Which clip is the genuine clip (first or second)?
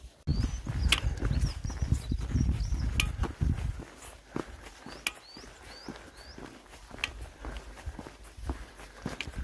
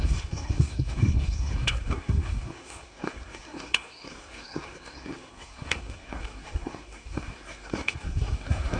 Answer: first